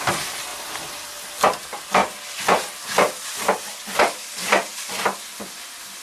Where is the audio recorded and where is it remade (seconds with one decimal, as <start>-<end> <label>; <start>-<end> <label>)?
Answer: 0.0-0.5 remade; 0.5-1.2 recorded; 1.2-6.0 remade